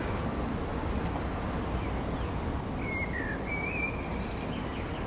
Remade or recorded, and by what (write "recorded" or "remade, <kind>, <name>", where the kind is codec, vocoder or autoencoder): recorded